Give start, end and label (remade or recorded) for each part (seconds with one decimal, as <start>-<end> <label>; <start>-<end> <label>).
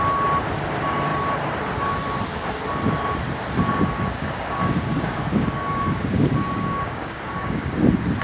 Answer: 0.0-3.7 recorded; 3.7-7.7 remade; 7.7-8.2 recorded